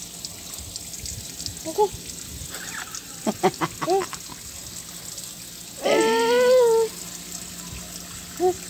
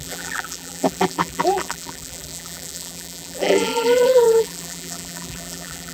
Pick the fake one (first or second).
second